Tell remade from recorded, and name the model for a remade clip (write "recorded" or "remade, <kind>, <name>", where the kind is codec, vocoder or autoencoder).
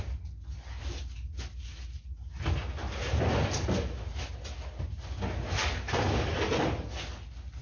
recorded